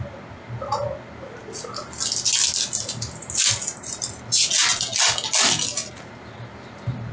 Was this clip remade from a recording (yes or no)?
no